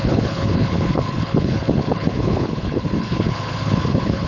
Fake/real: fake